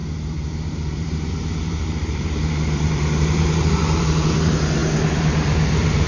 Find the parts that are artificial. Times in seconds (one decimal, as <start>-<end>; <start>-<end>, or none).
0.0-6.1